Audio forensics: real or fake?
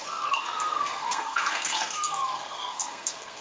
fake